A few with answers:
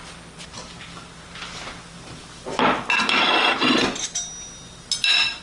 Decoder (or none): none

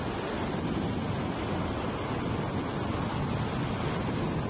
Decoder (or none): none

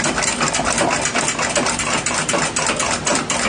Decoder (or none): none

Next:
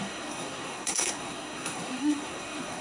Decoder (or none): codec, SNAC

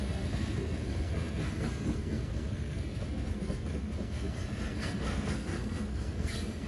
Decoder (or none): codec, SNAC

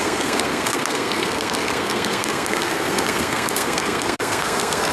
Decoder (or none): codec, SNAC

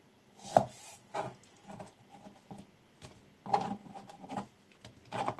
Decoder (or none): none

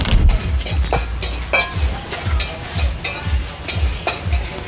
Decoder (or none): none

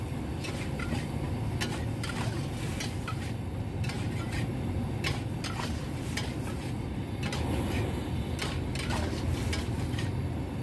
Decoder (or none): none